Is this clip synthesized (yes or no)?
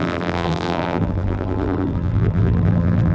yes